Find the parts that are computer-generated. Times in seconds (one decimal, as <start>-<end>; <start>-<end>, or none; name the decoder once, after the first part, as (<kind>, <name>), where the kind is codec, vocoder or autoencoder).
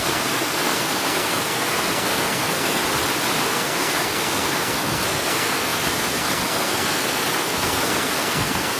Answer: 0.0-2.8 (codec, SNAC); 3.4-8.8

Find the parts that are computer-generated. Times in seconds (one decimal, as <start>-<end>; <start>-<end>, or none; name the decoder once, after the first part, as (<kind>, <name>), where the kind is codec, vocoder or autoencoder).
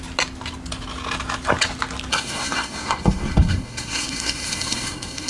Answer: 2.1-5.3 (codec, SNAC)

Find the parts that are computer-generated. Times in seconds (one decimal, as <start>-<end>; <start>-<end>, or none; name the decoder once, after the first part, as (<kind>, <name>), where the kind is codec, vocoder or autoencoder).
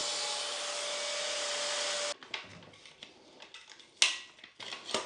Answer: none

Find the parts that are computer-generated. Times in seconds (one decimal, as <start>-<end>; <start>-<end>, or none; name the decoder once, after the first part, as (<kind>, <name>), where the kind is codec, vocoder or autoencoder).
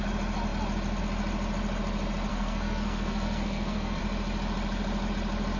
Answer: 2.3-4.0 (codec, SNAC)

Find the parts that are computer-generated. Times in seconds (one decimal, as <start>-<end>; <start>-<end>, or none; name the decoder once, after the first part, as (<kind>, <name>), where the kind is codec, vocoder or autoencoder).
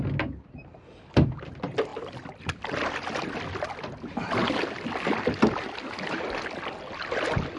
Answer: none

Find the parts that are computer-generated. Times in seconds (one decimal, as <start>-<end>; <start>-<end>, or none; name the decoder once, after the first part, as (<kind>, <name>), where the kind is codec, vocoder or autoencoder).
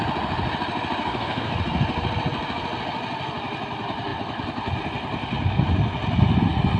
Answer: 1.0-1.5 (codec, SNAC)